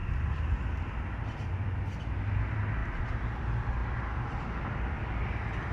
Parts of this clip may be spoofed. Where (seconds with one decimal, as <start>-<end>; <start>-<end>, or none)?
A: none